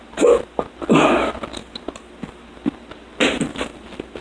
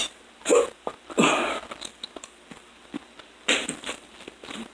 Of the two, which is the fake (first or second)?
second